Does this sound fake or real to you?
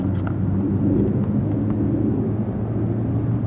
real